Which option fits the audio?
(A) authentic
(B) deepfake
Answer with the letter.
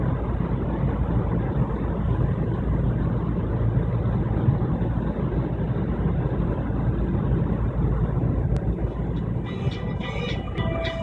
A